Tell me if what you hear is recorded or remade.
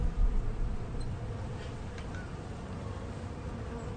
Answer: recorded